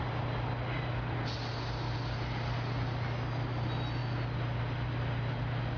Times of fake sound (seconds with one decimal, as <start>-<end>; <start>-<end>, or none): none